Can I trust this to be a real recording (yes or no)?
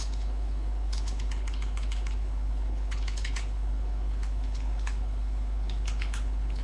no